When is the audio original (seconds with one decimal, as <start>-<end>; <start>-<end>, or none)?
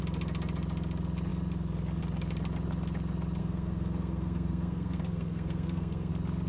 0.0-3.4; 6.1-6.5